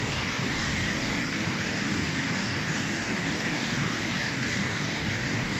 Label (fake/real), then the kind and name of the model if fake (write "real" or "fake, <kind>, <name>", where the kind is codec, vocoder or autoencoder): fake, codec, DAC